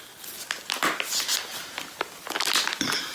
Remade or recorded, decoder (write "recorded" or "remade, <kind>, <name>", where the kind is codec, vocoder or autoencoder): recorded